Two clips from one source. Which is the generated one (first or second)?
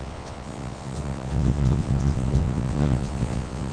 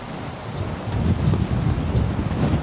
first